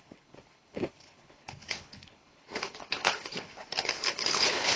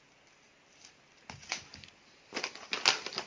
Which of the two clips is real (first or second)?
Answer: second